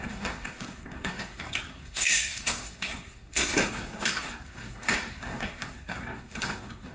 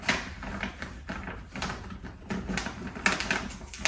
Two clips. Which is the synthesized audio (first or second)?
first